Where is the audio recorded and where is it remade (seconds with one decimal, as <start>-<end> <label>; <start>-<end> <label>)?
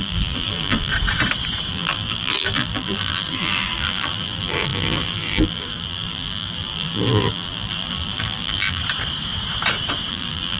0.0-0.9 remade; 0.9-1.7 recorded; 1.7-8.8 remade; 8.8-10.1 recorded; 10.1-10.6 remade